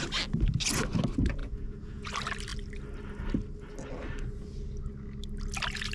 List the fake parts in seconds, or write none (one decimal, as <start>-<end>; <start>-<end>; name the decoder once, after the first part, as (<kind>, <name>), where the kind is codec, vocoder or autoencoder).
1.4-2.1 (vocoder, Vocos)